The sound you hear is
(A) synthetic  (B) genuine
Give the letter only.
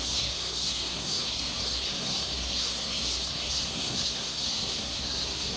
A